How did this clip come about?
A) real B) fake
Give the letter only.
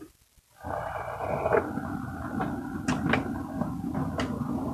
A